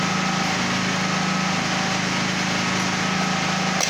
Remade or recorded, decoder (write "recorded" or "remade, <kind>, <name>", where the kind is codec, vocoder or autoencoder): recorded